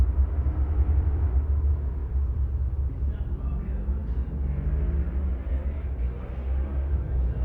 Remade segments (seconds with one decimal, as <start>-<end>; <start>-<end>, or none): none